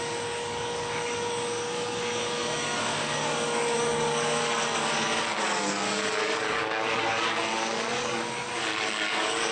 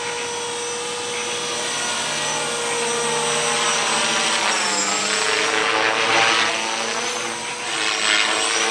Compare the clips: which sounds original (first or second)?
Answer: second